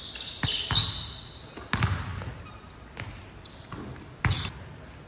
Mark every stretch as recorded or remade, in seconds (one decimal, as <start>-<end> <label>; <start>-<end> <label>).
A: 0.0-5.1 recorded

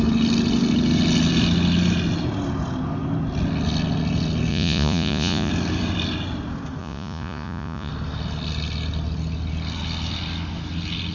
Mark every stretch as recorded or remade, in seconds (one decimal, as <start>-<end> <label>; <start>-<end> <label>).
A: 0.0-4.5 recorded; 4.5-5.5 remade; 5.5-6.8 recorded; 6.8-7.9 remade; 7.9-11.1 recorded

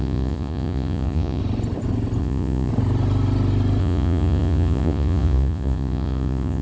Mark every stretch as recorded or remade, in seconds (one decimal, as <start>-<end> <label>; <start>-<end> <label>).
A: 0.0-1.4 remade; 1.4-2.2 recorded; 2.2-2.7 remade; 2.7-3.8 recorded; 3.8-6.6 remade

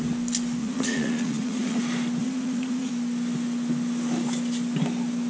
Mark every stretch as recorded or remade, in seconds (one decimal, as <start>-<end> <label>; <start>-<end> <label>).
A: 0.0-0.6 recorded; 0.6-1.8 remade; 1.8-2.2 recorded; 2.2-2.9 remade; 2.9-5.3 recorded

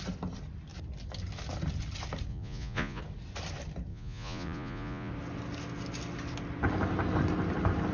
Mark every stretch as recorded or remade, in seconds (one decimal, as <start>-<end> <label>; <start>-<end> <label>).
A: 0.0-2.3 recorded; 2.3-3.0 remade; 3.0-3.9 recorded; 3.9-5.1 remade; 5.1-7.9 recorded

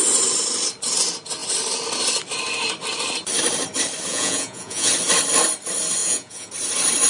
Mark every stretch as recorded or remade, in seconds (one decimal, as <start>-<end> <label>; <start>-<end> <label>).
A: 0.0-4.1 recorded; 4.1-4.9 remade; 4.9-6.0 recorded; 6.0-6.5 remade; 6.5-7.1 recorded